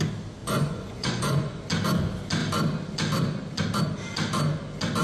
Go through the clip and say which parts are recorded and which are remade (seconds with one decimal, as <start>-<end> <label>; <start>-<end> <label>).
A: 0.0-0.4 recorded; 0.4-1.6 remade; 1.6-5.0 recorded